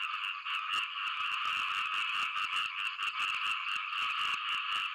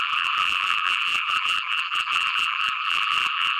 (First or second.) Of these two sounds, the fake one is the second